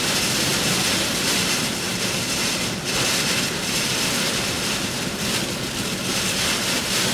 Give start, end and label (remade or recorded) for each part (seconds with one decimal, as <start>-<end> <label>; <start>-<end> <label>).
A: 0.0-7.1 recorded